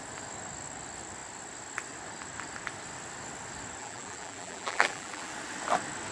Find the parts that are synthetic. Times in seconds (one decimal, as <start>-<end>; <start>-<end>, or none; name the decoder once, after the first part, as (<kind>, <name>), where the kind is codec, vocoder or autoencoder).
3.8-5.3 (vocoder, BigVGAN v2)